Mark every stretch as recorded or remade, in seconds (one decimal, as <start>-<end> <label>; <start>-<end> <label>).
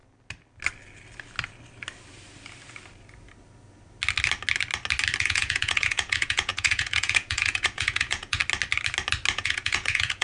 0.0-5.2 recorded; 5.2-8.4 remade; 8.4-9.3 recorded; 9.3-10.2 remade